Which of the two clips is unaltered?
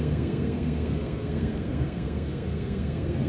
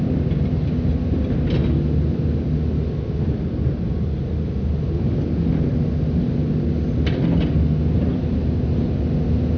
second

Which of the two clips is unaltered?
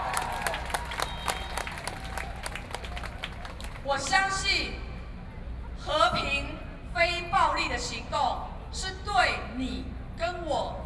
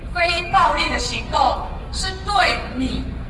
first